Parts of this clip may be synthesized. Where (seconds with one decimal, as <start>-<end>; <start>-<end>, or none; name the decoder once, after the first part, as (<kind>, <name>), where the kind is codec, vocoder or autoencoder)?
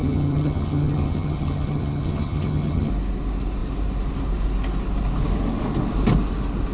0.0-2.9 (vocoder, HiFi-GAN)